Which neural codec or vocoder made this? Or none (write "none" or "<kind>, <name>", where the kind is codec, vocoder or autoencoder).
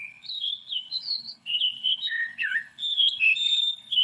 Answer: codec, HILCodec